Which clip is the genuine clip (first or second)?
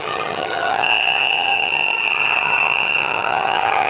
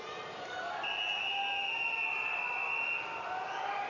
second